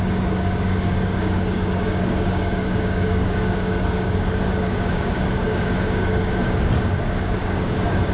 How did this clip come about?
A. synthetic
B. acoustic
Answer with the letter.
A